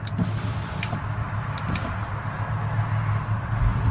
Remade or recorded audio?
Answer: recorded